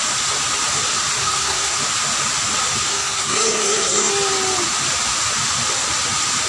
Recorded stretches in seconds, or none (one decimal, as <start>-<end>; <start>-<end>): 0.0-1.2; 1.8-2.9; 4.1-6.5